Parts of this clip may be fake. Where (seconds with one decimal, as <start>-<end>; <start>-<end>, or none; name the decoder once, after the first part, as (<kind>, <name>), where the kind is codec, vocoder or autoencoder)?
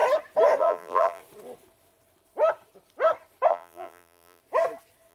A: 0.6-1.2 (vocoder, BigVGAN v2); 3.5-4.4